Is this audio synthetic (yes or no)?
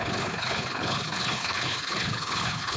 yes